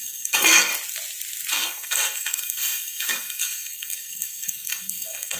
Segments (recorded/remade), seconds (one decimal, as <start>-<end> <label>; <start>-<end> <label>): 0.0-0.7 remade; 0.7-1.5 recorded; 1.5-5.4 remade

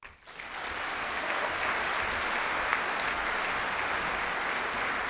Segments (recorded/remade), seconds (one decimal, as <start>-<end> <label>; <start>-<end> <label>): 0.0-1.0 recorded; 1.0-1.6 remade; 1.6-5.1 recorded

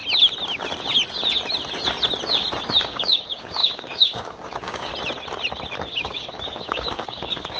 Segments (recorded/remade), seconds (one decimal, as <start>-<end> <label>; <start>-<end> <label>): 0.0-2.8 recorded; 2.8-4.9 remade; 4.9-5.9 recorded; 5.9-7.6 remade

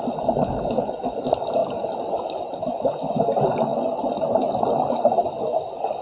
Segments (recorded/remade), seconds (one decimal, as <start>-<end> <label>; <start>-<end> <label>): 0.0-6.0 recorded

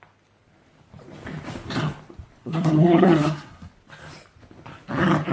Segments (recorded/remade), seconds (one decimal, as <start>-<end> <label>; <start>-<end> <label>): 0.0-2.4 recorded; 2.4-3.7 remade; 3.7-5.3 recorded